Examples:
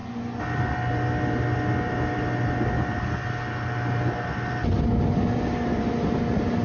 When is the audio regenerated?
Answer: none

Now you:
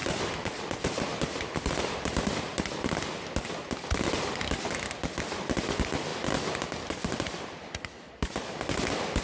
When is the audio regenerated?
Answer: 0.0-3.7 (vocoder, BigVGAN v2); 6.1-9.2

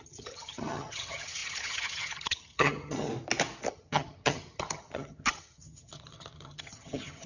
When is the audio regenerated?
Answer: 0.0-3.1 (vocoder, HiFi-GAN); 3.7-7.3

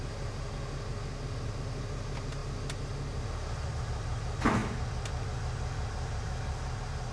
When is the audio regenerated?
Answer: none

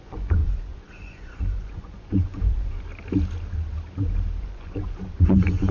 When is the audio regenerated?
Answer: 0.0-2.9 (vocoder, Vocos); 4.4-5.7

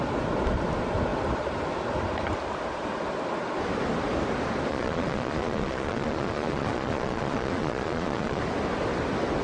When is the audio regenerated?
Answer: 4.7-8.4 (vocoder, Vocos)

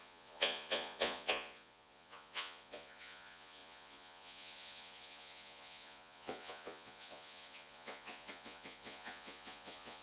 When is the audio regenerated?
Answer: 0.0-10.0 (vocoder, Vocos)

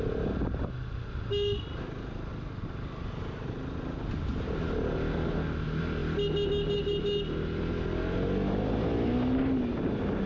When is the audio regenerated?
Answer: none